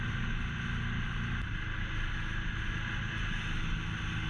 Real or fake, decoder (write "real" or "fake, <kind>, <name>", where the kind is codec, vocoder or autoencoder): real